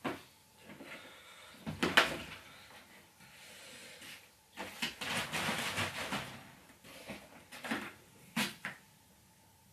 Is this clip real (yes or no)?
yes